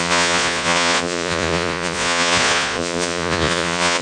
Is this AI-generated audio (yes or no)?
yes